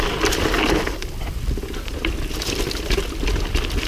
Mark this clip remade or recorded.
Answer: recorded